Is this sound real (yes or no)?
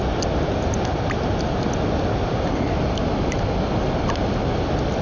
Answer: yes